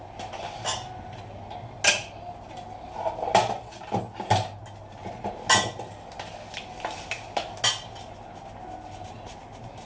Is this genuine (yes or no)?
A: yes